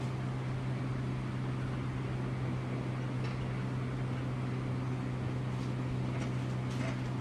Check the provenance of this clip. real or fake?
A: real